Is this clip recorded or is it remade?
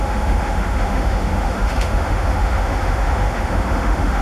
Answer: remade